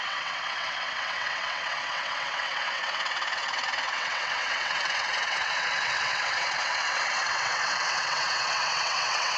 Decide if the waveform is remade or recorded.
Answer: remade